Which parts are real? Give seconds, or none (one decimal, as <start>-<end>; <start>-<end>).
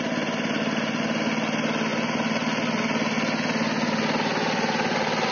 0.0-5.3